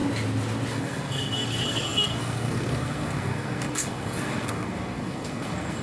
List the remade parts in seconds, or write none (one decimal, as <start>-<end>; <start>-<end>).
0.7-5.8

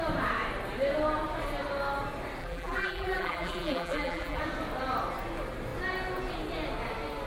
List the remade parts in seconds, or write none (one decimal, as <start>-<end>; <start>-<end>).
2.4-4.4